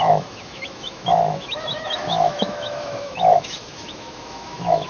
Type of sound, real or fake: fake